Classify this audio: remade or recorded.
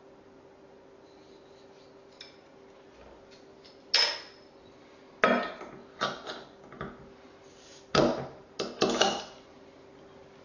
recorded